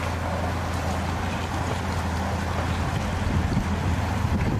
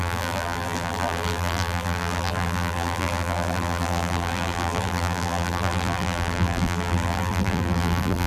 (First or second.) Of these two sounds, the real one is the first